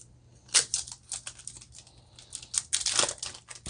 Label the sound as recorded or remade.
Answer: recorded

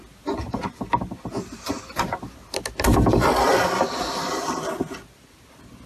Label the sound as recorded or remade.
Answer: recorded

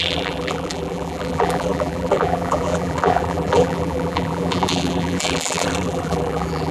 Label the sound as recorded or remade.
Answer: remade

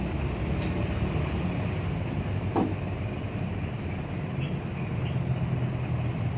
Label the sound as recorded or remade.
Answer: recorded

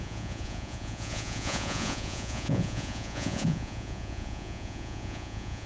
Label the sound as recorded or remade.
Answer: remade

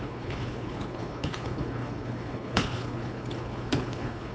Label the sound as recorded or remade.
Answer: remade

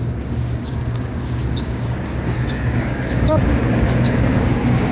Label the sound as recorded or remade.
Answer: remade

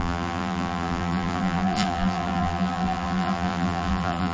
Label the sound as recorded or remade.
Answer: remade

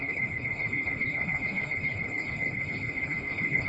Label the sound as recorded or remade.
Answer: remade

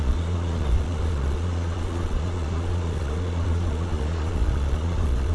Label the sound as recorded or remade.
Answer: remade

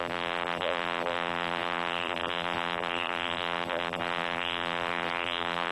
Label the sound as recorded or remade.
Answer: remade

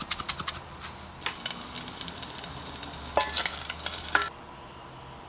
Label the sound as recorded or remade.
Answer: recorded